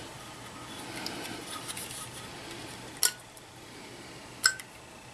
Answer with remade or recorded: recorded